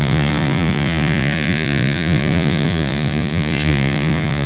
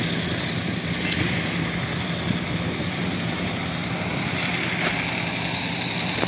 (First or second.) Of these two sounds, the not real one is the first